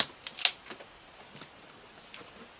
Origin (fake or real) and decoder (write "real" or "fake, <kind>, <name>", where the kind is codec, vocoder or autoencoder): real